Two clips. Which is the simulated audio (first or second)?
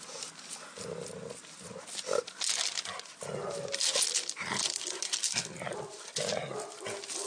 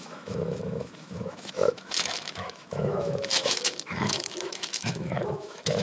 second